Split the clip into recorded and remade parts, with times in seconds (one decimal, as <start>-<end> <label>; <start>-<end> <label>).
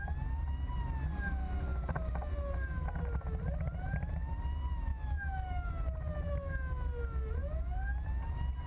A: 0.0-4.9 recorded; 4.9-5.7 remade; 5.7-8.7 recorded